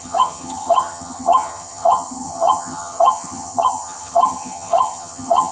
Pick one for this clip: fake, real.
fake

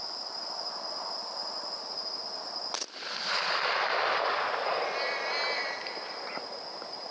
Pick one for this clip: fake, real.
real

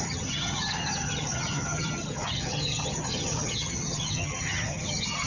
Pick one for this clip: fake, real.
fake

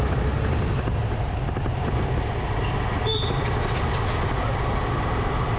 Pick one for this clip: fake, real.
real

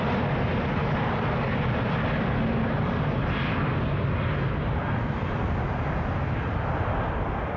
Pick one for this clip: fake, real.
real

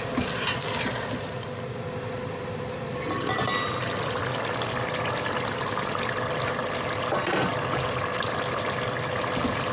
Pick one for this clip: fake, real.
real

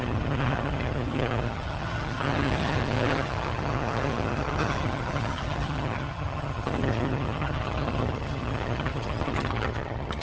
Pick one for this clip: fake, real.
fake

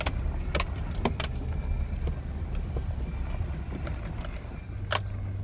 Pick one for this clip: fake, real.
real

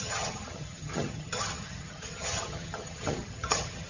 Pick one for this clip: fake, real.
fake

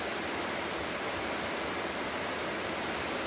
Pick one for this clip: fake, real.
real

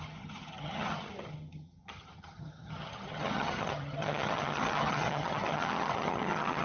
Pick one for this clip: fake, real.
fake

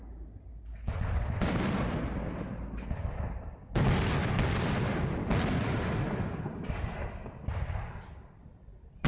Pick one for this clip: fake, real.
real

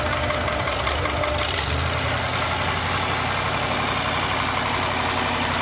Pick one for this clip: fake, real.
real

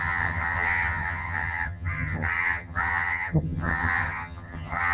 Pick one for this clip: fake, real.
fake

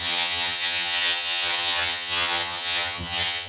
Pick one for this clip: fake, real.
fake